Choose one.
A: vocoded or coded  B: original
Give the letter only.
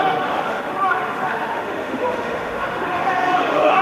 A